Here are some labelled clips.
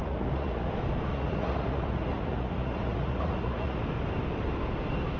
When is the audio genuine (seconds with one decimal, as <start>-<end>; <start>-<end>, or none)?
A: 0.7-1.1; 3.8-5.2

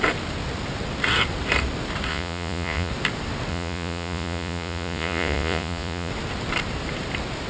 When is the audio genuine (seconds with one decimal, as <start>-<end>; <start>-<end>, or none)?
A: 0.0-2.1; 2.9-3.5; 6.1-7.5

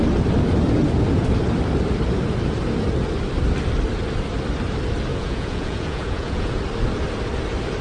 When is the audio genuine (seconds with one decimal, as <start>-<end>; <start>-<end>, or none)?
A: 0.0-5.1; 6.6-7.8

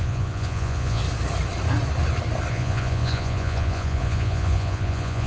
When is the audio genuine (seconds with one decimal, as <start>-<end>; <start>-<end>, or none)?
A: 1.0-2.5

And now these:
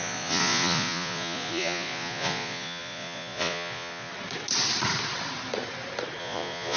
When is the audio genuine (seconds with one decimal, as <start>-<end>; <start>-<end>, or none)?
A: 4.1-6.2

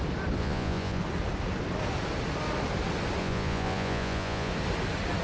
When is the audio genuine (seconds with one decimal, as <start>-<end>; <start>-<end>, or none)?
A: 0.0-0.4; 1.0-3.2; 4.5-5.2

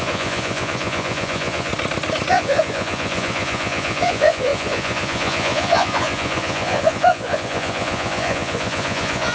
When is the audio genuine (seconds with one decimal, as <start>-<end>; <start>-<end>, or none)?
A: 1.7-2.3

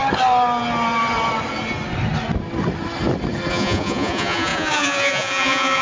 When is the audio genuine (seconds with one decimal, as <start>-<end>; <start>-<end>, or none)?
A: 0.0-3.5